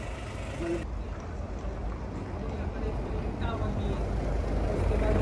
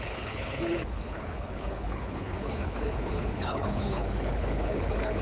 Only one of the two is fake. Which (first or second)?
second